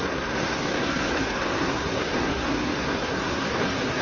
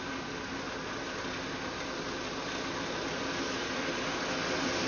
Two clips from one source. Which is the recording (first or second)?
second